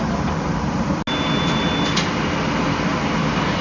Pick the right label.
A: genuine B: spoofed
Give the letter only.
A